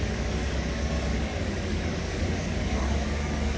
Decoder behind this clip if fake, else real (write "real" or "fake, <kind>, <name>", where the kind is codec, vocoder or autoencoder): fake, codec, DAC